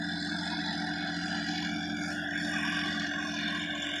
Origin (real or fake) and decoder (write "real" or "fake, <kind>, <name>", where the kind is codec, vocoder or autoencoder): real